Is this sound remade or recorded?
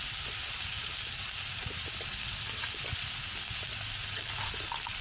recorded